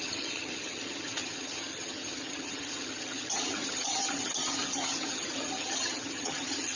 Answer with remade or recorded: remade